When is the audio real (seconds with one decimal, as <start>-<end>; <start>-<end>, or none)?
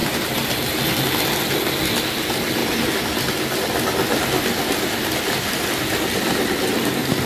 0.8-7.3